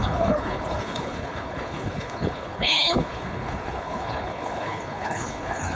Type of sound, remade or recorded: remade